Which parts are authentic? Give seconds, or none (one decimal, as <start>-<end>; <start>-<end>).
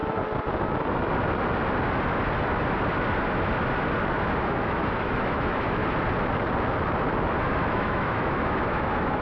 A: 0.0-4.4; 5.8-7.7